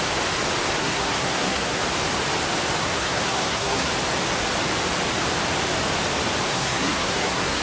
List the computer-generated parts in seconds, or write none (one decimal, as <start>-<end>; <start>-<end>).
0.8-1.8; 2.8-3.9; 6.5-7.6